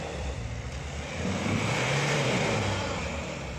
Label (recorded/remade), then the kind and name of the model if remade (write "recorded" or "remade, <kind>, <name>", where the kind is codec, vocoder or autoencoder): remade, vocoder, BigVGAN v2